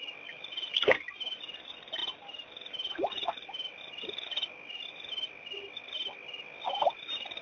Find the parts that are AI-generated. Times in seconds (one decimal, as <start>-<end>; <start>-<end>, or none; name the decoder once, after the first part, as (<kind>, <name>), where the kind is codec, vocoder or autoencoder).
none